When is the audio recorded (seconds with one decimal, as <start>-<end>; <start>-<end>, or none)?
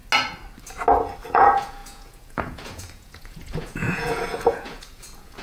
0.0-1.3